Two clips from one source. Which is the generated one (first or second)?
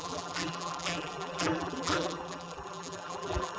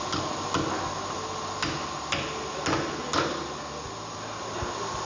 first